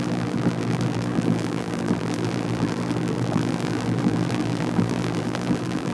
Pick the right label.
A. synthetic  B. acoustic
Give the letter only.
A